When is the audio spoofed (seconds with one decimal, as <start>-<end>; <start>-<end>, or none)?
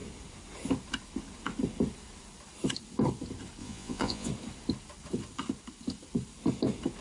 3.6-4.3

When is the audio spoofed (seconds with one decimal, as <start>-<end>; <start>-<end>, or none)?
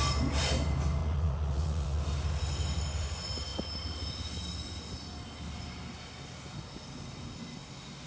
1.0-2.0